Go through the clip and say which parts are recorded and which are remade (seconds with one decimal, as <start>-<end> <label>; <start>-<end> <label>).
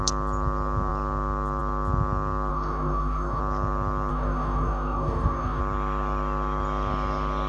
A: 0.0-2.5 recorded; 2.5-3.4 remade; 3.4-4.1 recorded; 4.1-5.6 remade; 5.6-7.5 recorded